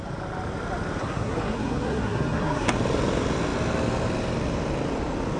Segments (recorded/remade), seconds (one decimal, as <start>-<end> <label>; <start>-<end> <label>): 0.0-1.0 recorded; 1.0-2.7 remade; 2.7-5.4 recorded